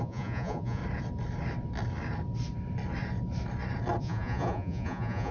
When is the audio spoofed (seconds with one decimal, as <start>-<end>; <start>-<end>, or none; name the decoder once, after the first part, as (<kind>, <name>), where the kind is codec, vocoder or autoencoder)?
0.0-0.8 (vocoder, Vocos); 4.0-5.3